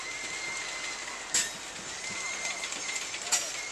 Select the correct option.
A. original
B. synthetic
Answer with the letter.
A